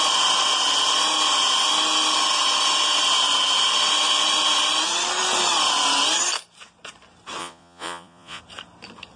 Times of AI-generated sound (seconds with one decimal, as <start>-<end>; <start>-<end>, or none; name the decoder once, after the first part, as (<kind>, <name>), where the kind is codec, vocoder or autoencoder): 7.4-8.4 (vocoder, Vocos)